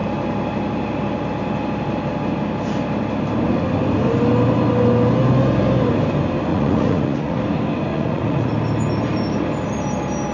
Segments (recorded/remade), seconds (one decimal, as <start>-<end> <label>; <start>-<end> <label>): 0.0-6.5 recorded; 6.5-7.4 remade; 7.4-7.9 recorded; 7.9-8.5 remade; 8.5-10.3 recorded